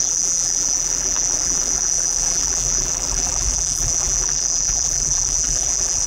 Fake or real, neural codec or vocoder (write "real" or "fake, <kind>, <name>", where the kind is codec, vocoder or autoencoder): fake, vocoder, BigVGAN v2